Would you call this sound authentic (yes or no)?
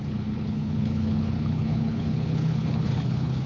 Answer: no